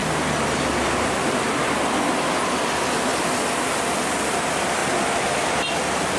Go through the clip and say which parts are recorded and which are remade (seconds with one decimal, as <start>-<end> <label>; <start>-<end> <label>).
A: 0.0-1.3 remade; 1.3-6.2 recorded